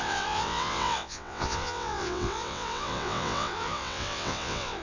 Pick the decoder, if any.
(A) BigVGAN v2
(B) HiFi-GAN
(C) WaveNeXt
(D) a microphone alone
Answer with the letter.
C